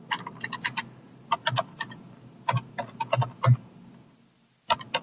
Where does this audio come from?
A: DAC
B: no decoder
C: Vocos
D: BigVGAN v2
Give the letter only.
B